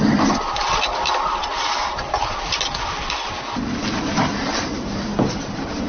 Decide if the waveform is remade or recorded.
recorded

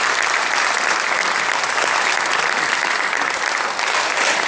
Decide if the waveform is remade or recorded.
recorded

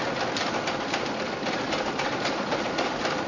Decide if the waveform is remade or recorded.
recorded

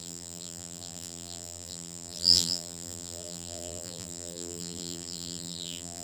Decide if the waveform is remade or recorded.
remade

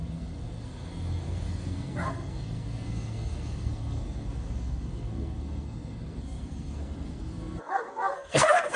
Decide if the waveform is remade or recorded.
remade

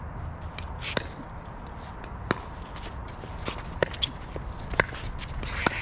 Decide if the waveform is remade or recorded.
recorded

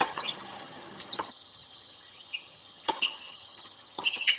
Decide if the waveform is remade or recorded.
remade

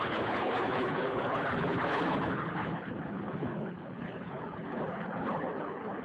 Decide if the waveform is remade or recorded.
remade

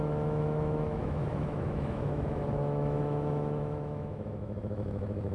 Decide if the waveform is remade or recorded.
remade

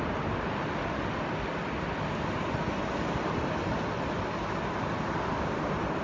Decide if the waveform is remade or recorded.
recorded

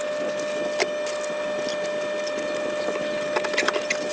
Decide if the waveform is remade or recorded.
recorded